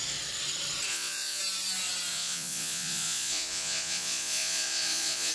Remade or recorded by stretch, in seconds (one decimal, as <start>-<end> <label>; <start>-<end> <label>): 0.0-0.9 recorded; 0.9-1.4 remade; 1.4-2.1 recorded; 2.1-5.3 remade